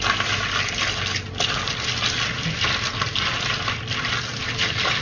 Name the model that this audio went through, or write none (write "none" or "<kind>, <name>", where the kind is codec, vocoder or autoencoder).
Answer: none